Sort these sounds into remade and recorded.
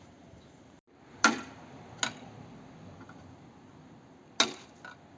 recorded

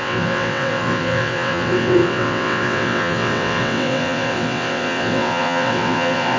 remade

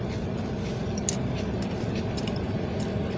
recorded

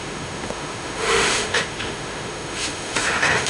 remade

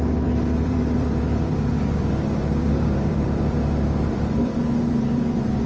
remade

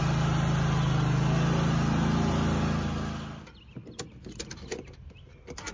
recorded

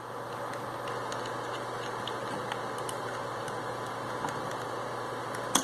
recorded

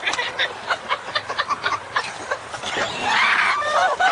remade